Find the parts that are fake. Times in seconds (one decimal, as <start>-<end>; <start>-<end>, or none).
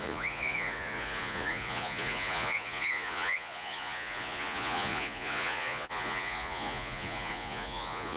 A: 0.0-8.2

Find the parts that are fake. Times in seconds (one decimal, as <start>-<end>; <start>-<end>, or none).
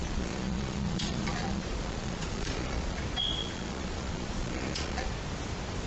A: 0.0-3.0; 3.4-5.1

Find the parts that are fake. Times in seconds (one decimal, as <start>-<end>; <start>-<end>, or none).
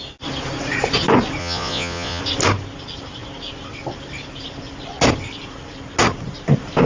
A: 1.4-2.2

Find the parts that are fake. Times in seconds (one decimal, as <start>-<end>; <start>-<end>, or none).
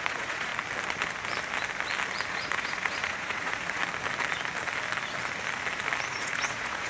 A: 0.0-0.5; 2.3-3.8; 6.1-6.9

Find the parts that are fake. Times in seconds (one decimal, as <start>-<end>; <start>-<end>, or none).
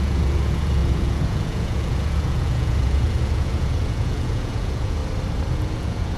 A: 0.0-5.0; 5.5-6.2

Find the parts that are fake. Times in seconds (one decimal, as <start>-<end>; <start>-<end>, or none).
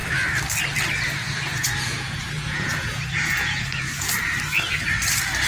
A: 1.2-4.0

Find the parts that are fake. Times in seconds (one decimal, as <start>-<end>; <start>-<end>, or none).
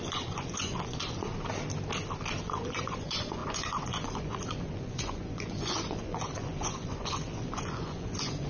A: 0.0-1.3; 2.4-8.5